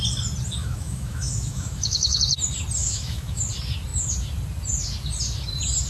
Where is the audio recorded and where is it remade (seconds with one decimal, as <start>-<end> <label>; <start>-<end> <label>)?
0.0-0.6 recorded; 0.6-2.2 remade; 2.2-2.8 recorded; 2.8-3.4 remade; 3.4-5.9 recorded